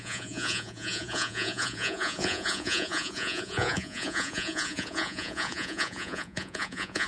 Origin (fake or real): fake